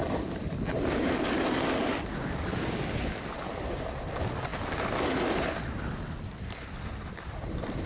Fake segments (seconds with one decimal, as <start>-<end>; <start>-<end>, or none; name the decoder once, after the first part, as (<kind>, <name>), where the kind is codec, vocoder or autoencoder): 0.0-0.6 (vocoder, BigVGAN v2)